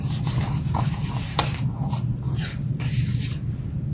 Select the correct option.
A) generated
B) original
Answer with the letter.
A